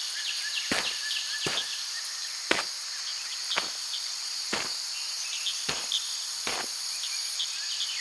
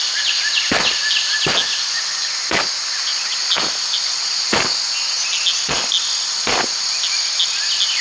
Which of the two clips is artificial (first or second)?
first